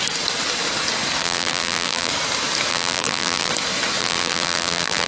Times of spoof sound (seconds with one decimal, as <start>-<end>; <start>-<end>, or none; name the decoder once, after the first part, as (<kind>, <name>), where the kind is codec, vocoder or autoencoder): 1.2-2.1 (vocoder, BigVGAN v2); 2.7-3.5; 4.0-5.1